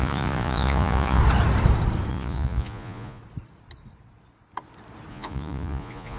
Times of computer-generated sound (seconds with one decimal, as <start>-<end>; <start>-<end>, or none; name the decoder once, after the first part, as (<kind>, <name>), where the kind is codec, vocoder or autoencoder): 0.0-1.2 (vocoder, Vocos); 2.1-3.2; 5.1-6.2